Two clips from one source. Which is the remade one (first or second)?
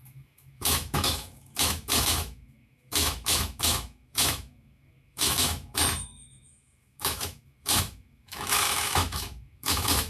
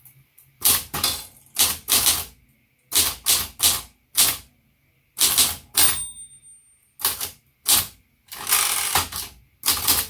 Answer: first